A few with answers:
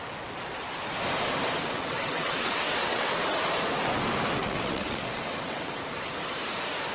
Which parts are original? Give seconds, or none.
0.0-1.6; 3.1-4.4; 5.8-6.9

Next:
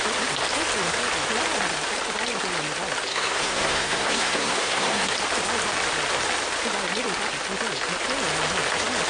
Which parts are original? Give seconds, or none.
0.0-3.1; 5.1-9.1

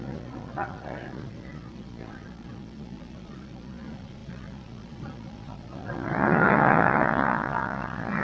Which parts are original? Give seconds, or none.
none

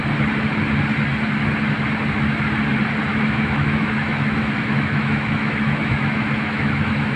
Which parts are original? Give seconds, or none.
0.0-3.1

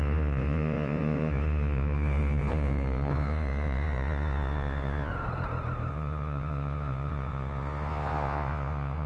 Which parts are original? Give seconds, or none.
5.1-5.9